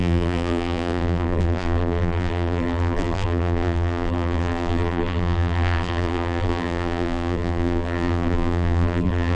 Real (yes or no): no